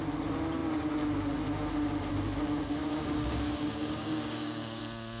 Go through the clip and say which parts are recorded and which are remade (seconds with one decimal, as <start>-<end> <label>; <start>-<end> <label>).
0.0-2.8 recorded; 2.8-4.8 remade; 4.8-5.2 recorded